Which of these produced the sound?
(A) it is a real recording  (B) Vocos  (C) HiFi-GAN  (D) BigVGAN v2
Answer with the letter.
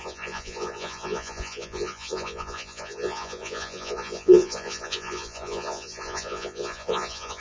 B